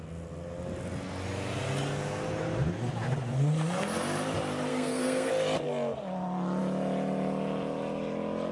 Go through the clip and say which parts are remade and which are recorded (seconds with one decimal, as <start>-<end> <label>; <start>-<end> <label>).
0.0-4.7 recorded; 4.7-5.3 remade; 5.3-8.5 recorded